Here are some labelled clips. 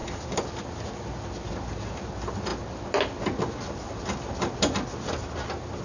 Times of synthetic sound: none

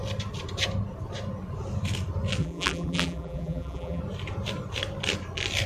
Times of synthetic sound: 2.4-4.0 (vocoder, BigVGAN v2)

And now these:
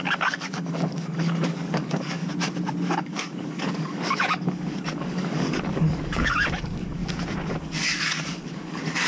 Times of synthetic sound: 0.0-2.2 (codec, DAC); 2.8-7.0; 7.6-9.1

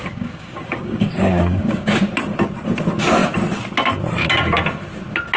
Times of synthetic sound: 0.0-2.0 (codec, DAC)

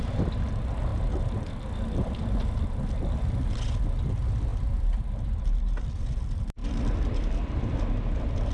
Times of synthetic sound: 4.5-6.0 (vocoder, BigVGAN v2); 6.6-7.8